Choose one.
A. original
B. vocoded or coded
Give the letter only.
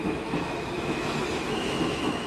B